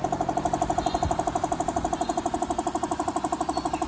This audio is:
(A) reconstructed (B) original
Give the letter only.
B